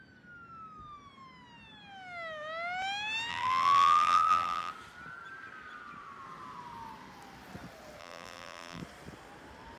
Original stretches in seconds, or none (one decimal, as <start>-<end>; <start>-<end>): 0.0-3.3; 4.7-8.0; 8.8-9.8